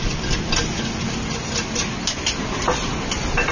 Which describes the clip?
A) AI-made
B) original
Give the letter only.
B